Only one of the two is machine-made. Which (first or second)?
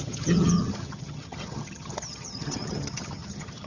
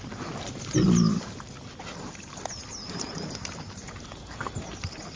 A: first